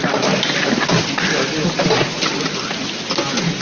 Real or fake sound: real